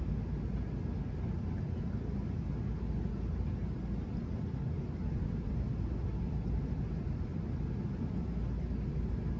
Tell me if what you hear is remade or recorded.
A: recorded